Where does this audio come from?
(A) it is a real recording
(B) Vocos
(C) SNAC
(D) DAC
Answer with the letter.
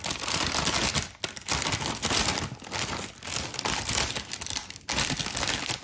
A